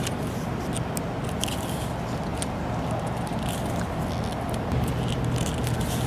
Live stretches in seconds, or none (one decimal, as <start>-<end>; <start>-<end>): 0.0-6.1